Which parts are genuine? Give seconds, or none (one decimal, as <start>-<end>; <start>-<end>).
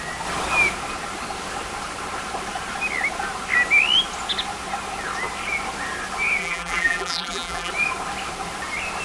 0.0-6.4; 7.7-9.0